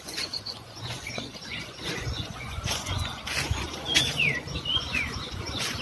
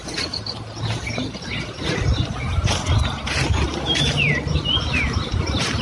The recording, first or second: second